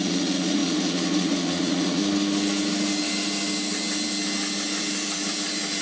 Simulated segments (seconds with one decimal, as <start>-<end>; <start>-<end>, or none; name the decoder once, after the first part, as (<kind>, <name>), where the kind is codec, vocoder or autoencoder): 0.0-2.0 (vocoder, Vocos)